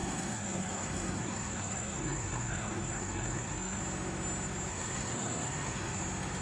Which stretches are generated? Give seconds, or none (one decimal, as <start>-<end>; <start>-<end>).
0.0-3.8; 4.7-6.0